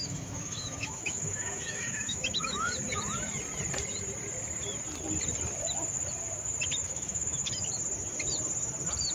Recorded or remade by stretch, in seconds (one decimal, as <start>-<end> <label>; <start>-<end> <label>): 0.0-2.7 remade; 2.7-6.8 recorded; 6.8-7.5 remade; 7.5-9.1 recorded